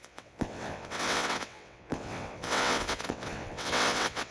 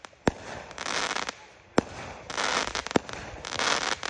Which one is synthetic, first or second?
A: first